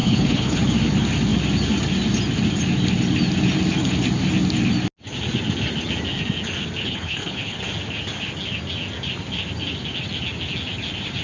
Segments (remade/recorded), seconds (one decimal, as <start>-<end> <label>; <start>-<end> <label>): 0.0-0.6 remade; 0.6-6.8 recorded; 6.8-7.6 remade; 7.6-11.2 recorded